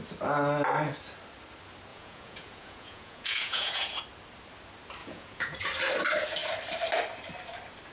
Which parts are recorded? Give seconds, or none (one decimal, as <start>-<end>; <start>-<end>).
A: 0.0-1.9; 4.0-5.0; 5.6-7.9